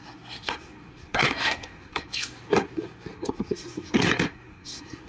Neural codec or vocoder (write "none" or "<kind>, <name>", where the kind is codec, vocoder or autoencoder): codec, SNAC